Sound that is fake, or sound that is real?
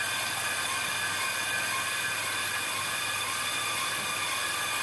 real